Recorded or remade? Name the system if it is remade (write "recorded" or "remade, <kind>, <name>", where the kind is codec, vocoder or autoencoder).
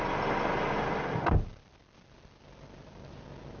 recorded